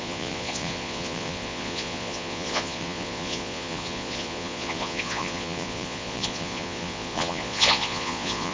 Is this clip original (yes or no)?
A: no